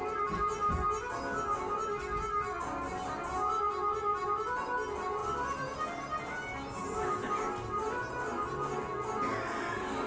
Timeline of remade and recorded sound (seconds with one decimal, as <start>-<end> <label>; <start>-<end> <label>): 0.0-10.1 recorded